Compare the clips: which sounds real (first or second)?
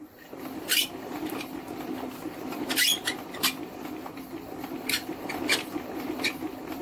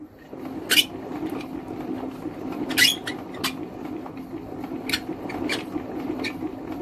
second